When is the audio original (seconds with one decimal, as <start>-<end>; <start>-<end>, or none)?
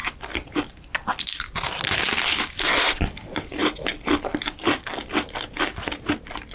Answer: 0.0-6.5